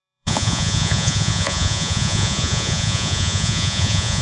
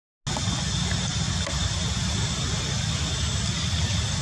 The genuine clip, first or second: second